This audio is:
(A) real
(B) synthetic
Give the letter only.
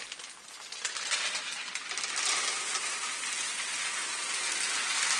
A